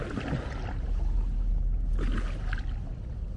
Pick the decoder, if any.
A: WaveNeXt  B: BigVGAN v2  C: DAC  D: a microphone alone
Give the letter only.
D